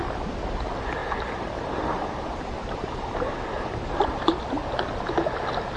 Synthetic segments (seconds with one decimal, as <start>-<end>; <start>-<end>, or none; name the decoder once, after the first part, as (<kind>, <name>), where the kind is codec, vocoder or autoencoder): 1.0-4.5 (vocoder, BigVGAN v2)